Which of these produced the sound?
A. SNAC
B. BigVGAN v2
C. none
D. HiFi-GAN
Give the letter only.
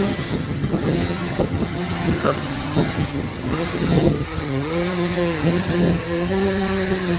D